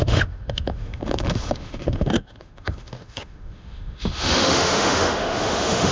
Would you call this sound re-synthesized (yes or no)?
yes